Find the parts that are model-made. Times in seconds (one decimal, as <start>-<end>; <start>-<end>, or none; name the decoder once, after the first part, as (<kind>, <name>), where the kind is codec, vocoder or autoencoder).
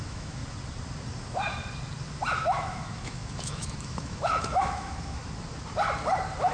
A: 0.0-0.4 (autoencoder, DAC-VAE); 2.3-5.2